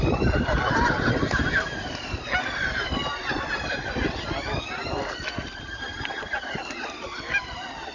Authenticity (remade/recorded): recorded